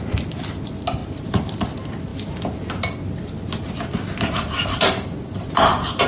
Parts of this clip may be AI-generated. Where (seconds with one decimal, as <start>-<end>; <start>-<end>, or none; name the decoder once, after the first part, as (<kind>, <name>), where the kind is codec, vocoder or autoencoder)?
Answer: none